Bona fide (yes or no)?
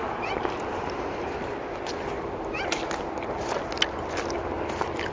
yes